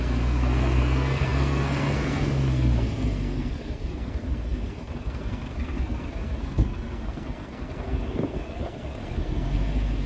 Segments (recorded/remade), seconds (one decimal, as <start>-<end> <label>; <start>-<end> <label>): 0.0-10.1 remade